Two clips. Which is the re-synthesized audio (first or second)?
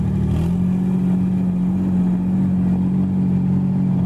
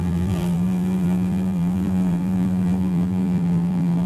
second